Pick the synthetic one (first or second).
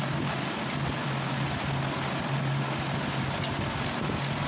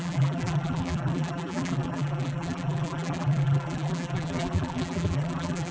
second